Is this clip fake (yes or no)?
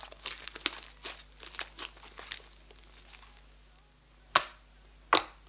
no